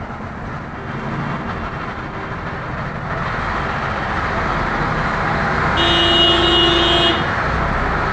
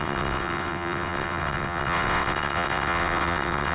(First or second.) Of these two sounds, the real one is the first